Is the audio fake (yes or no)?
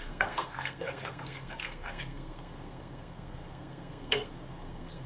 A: yes